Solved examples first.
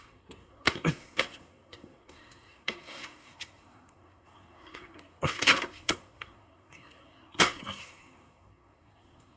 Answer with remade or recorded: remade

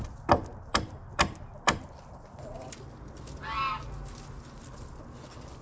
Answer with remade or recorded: recorded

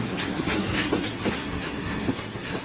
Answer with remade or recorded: remade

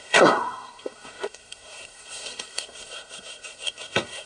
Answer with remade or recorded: remade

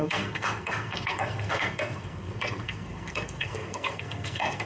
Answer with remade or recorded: remade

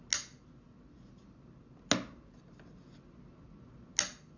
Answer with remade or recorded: recorded